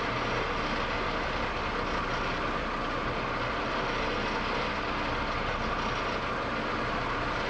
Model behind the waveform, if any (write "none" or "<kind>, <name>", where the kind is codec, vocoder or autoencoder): none